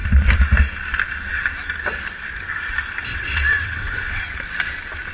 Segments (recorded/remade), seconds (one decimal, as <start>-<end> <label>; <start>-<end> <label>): 0.0-3.1 recorded; 3.1-4.2 remade; 4.2-5.1 recorded